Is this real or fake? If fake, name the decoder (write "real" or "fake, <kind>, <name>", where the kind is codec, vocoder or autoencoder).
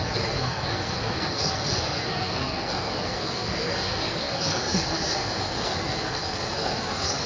fake, codec, SNAC